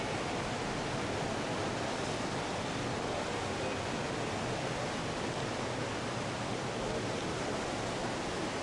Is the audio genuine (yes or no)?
yes